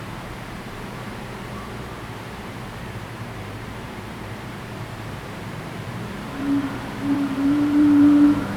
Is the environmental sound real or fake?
fake